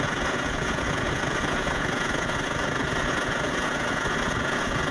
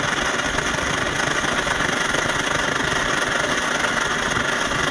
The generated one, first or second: first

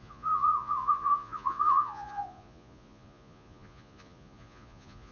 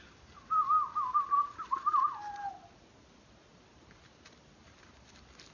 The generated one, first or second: first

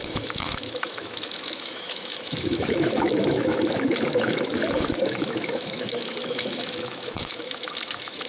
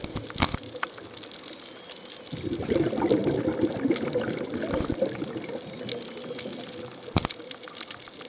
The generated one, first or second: first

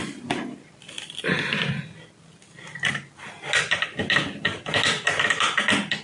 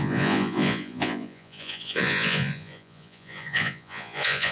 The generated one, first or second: second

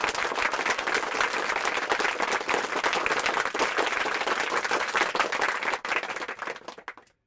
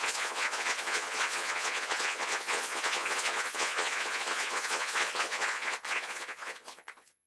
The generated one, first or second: second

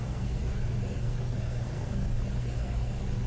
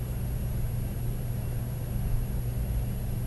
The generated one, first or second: first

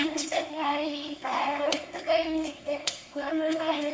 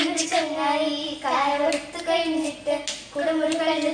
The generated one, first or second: first